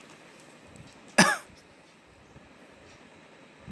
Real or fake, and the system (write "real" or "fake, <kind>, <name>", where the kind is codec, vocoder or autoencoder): real